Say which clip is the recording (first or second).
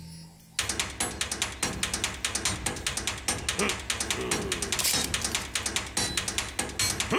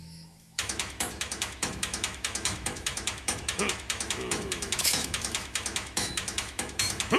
first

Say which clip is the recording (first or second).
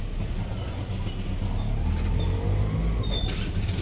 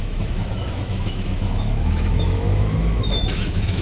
first